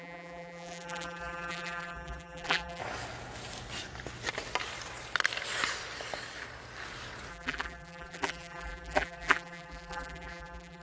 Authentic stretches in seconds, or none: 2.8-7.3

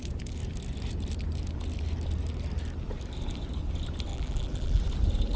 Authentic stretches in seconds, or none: 0.0-4.1; 4.8-5.4